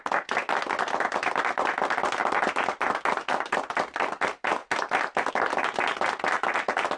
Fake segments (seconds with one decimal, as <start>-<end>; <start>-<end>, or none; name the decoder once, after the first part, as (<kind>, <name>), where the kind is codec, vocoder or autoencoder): none